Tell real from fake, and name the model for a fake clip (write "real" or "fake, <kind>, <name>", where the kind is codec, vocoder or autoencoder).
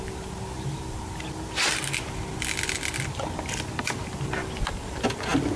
real